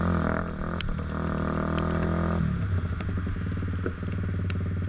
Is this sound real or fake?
real